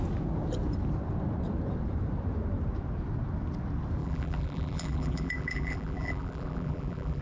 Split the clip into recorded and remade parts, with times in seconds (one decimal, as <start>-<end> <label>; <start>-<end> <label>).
0.0-4.0 recorded; 4.0-7.2 remade